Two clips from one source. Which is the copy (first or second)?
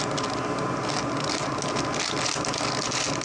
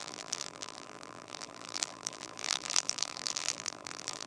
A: second